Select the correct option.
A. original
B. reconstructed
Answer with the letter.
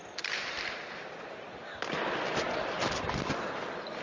A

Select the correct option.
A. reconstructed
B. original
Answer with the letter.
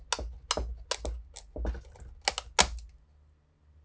B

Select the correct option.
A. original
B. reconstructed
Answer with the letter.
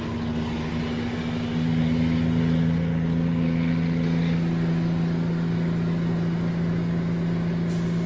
A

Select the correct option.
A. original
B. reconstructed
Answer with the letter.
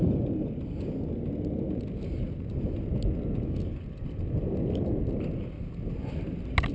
A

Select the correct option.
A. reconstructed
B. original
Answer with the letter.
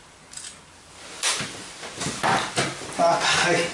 B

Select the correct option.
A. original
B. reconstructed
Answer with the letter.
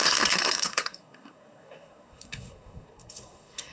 B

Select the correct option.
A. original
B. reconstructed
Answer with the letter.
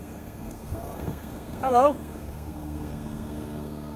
B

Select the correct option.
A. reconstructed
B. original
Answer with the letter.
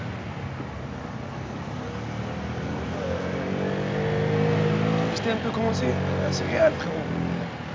B